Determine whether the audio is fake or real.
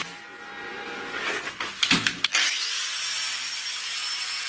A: real